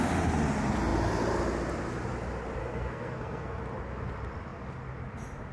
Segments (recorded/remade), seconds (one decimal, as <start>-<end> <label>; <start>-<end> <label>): 0.0-2.6 recorded; 2.6-3.6 remade; 3.6-5.5 recorded